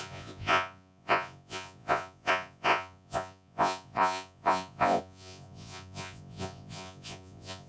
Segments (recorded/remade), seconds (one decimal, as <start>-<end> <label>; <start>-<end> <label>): 0.0-7.7 remade